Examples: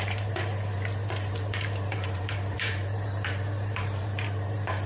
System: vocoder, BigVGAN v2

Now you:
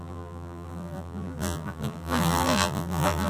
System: vocoder, BigVGAN v2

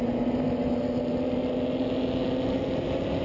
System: none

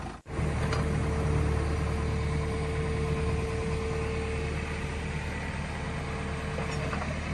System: none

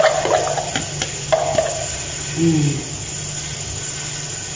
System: none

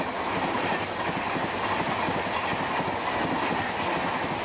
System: none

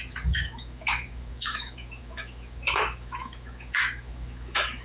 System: autoencoder, DAC-VAE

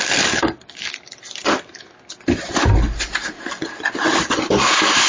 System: none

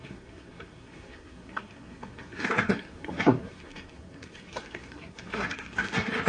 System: codec, SNAC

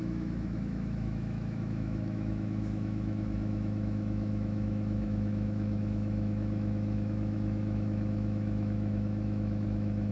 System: autoencoder, DAC-VAE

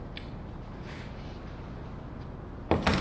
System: none